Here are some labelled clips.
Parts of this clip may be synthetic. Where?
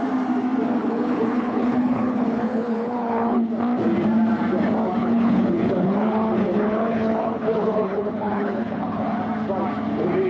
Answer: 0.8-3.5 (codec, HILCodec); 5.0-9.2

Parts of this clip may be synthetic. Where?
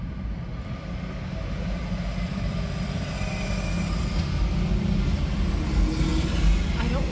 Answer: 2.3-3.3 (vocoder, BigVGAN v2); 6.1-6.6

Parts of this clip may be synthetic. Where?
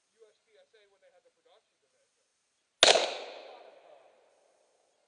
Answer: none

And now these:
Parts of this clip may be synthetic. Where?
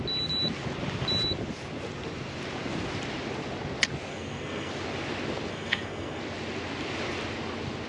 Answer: 4.1-4.7 (codec, SNAC); 5.5-6.2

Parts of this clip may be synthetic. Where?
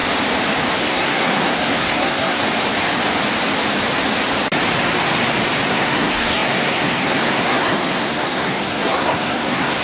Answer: 0.8-2.4 (codec, SNAC); 5.7-9.8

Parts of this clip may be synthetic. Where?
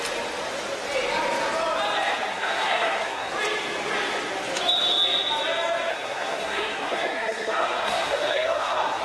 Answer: 2.3-3.3 (codec, SNAC); 5.9-9.0